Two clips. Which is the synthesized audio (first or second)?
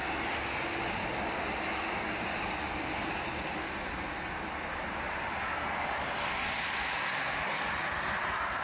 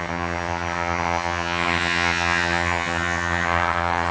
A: second